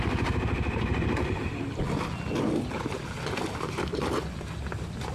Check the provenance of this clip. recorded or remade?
recorded